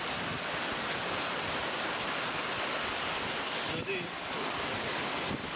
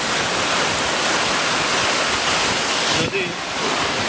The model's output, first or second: first